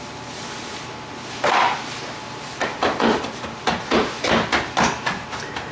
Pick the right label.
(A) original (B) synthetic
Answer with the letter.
A